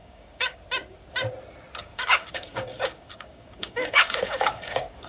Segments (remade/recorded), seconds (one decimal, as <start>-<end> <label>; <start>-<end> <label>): 0.0-0.6 remade; 0.6-1.8 recorded; 1.8-5.1 remade